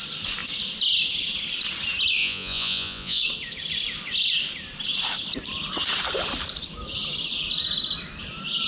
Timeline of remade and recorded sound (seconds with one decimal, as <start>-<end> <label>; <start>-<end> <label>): 0.0-2.2 recorded; 2.2-3.2 remade; 3.2-8.7 recorded